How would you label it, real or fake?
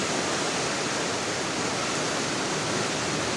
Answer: real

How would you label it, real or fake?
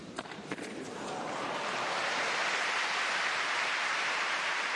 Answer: fake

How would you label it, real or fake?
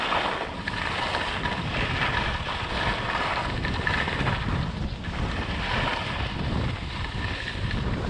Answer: real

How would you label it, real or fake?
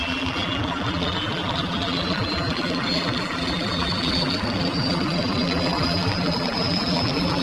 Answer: fake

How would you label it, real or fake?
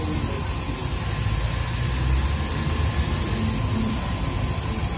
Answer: real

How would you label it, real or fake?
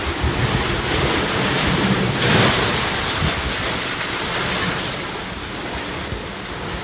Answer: real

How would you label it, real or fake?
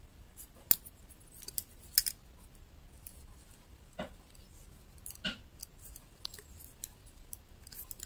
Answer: real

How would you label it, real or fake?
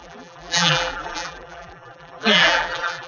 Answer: fake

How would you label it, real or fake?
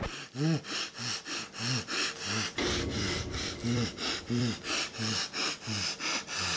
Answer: fake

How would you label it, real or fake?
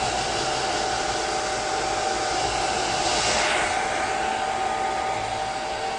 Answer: real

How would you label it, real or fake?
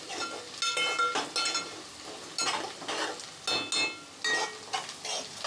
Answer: real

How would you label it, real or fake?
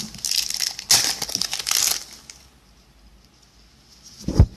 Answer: real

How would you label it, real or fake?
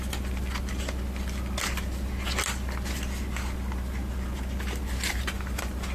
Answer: real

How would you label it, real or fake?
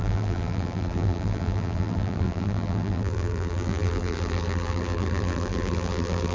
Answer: fake